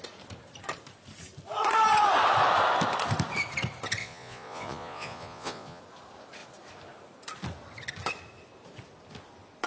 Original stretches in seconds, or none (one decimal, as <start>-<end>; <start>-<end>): 0.0-4.0; 5.8-9.7